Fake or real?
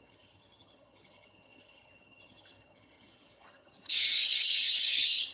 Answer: fake